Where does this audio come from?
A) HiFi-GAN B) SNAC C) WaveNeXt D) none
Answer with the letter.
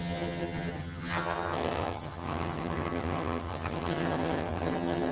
A